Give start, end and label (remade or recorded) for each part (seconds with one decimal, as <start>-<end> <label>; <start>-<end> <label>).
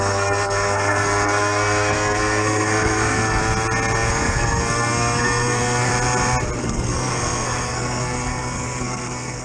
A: 0.0-3.4 remade; 3.4-4.1 recorded; 4.1-5.9 remade; 5.9-6.6 recorded; 6.6-9.4 remade